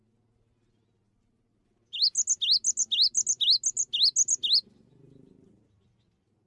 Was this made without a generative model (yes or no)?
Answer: yes